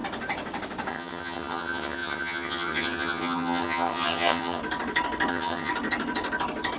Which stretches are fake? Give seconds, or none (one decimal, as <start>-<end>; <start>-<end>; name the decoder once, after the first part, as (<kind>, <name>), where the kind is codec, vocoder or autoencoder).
0.9-4.6 (vocoder, HiFi-GAN); 5.3-5.7